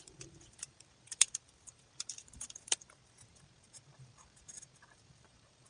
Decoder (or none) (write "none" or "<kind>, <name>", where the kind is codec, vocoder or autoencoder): vocoder, BigVGAN v2